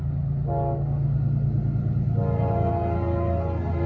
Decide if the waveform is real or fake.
real